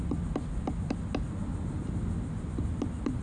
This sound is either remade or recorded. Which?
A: recorded